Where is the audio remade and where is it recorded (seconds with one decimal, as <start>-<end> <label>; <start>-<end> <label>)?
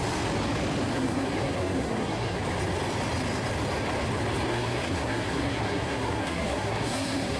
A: 0.0-0.9 recorded; 0.9-2.4 remade; 2.4-4.5 recorded; 4.5-7.4 remade